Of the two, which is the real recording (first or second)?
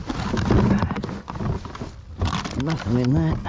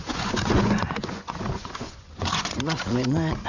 first